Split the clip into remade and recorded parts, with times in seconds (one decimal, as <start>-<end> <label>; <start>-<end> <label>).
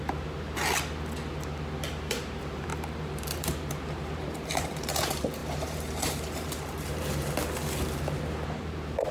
0.0-0.6 remade; 0.6-2.1 recorded; 2.1-9.1 remade